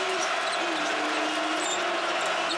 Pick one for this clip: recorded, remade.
recorded